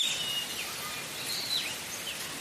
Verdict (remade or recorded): recorded